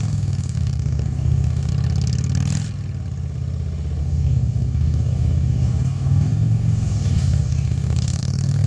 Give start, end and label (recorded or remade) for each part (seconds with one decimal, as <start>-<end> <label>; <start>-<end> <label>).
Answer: 0.0-1.7 remade; 1.7-4.0 recorded; 4.0-8.7 remade